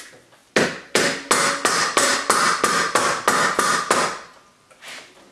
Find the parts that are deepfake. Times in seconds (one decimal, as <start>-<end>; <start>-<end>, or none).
none